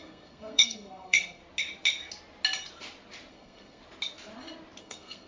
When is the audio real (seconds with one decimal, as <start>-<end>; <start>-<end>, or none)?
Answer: 1.4-3.3; 3.8-4.8